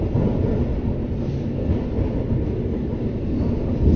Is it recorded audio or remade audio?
recorded